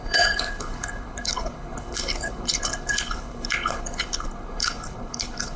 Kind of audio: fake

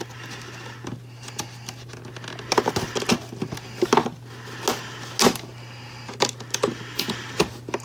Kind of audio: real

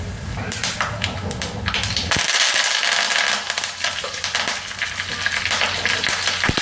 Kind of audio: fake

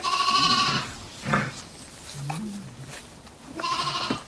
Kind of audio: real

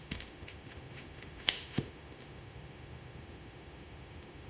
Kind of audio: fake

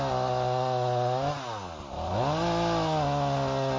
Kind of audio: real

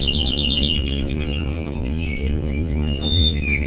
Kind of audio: fake